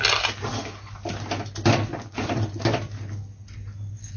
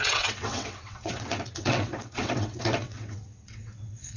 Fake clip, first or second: second